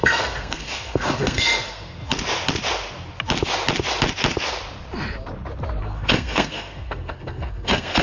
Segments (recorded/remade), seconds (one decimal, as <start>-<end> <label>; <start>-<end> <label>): 0.0-2.0 remade; 2.0-5.8 recorded; 5.8-8.0 remade